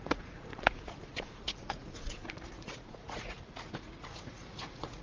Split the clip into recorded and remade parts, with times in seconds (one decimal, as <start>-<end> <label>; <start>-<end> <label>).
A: 0.0-5.0 remade